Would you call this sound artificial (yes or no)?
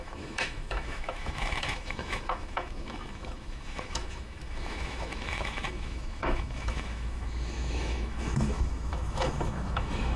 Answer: yes